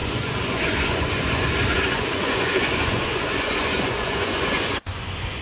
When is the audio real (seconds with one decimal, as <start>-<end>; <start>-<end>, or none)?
none